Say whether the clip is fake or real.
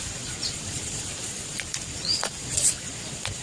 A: fake